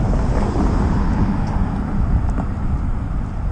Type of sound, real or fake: real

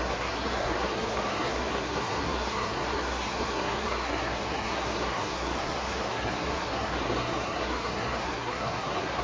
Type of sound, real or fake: fake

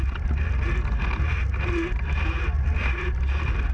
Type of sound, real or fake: real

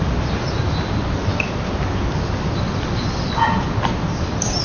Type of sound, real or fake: real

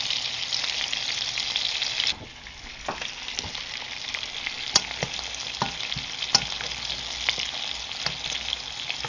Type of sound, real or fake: real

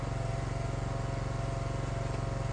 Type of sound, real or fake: real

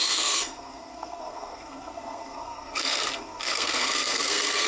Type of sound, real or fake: fake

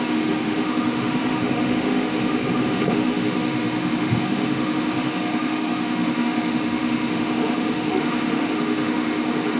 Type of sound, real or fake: fake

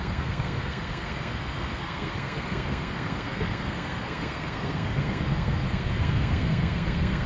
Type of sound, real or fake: fake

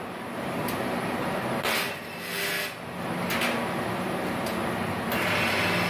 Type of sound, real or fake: real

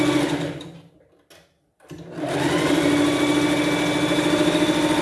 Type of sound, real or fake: real